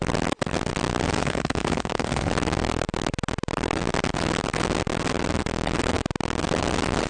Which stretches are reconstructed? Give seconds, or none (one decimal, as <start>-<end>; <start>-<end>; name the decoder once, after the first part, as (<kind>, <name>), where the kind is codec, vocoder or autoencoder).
1.2-2.3 (autoencoder, DAC-VAE)